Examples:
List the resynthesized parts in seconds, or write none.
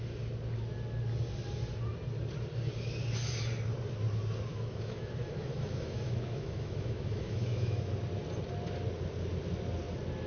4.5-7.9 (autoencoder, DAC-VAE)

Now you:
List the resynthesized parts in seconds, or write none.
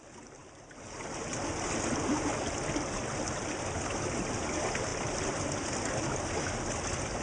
none